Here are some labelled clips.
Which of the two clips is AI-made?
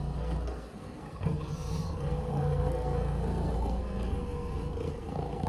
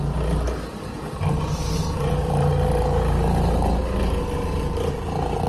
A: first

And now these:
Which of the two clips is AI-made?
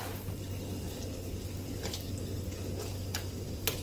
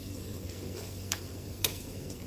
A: second